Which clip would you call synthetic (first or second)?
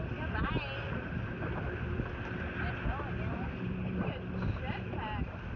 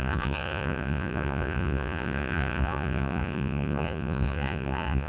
second